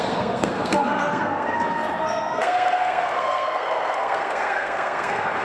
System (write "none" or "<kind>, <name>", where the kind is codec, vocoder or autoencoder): codec, SNAC